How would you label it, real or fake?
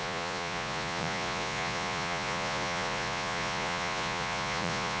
fake